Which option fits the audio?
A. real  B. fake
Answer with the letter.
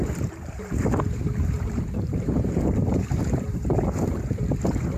B